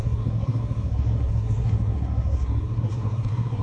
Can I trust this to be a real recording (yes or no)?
no